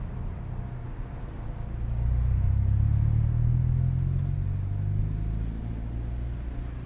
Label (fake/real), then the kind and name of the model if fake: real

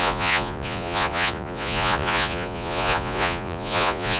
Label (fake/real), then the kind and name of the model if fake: fake, vocoder, Vocos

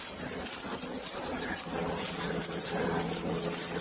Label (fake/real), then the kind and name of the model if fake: real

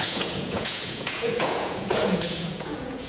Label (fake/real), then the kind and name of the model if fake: fake, vocoder, Vocos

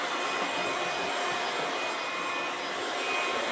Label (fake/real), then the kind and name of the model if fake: real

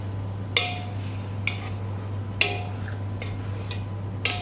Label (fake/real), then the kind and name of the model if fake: real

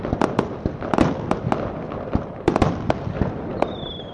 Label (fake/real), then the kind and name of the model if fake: real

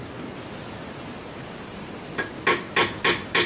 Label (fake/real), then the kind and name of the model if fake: real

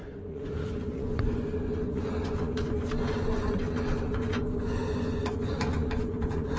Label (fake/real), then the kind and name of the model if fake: fake, vocoder, Vocos